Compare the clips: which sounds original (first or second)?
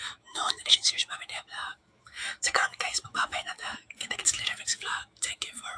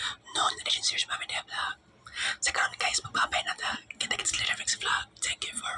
second